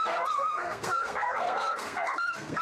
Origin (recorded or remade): remade